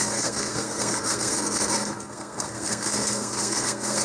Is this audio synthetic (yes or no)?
yes